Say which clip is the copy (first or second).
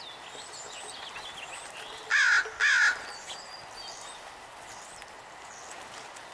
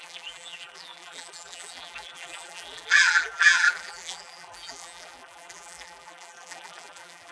second